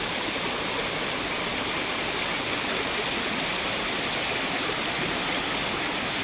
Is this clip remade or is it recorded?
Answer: recorded